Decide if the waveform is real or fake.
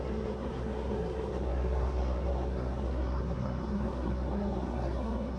fake